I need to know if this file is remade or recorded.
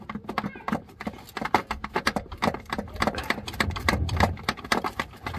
recorded